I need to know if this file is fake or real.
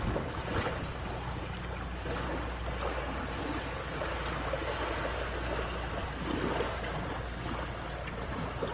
real